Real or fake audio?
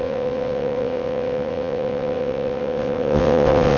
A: fake